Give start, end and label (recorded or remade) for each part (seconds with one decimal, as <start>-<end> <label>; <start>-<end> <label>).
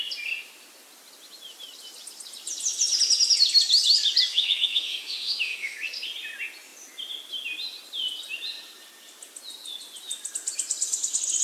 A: 0.0-4.3 recorded; 4.3-5.8 remade; 5.8-11.4 recorded